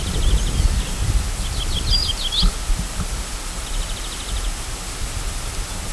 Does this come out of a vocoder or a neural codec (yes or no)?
no